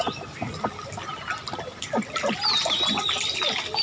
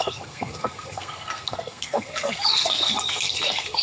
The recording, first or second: first